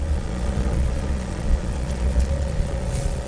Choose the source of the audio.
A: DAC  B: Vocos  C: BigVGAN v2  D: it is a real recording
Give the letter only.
B